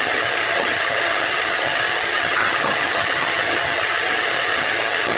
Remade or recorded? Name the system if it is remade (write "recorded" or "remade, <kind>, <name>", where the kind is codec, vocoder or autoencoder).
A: remade, vocoder, HiFi-GAN